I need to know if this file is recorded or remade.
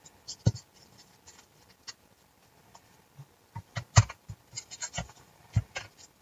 recorded